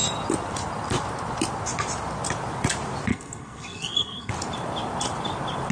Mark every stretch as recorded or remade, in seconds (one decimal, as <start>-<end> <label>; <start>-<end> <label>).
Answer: 0.0-3.1 recorded; 3.1-4.3 remade; 4.3-5.7 recorded